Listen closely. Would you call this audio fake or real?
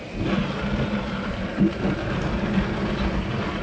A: real